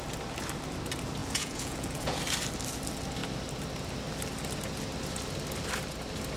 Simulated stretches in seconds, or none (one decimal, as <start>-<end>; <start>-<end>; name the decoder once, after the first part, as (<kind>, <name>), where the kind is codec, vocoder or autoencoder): 1.2-2.2 (vocoder, Vocos)